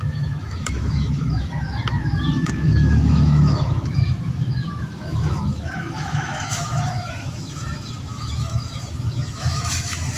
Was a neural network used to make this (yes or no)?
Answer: yes